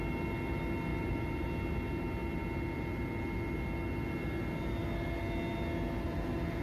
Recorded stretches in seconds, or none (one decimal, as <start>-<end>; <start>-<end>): 0.0-0.9; 1.5-6.6